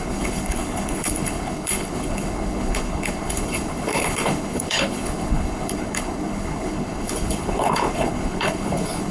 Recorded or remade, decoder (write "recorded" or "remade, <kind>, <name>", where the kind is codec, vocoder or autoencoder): remade, codec, HILCodec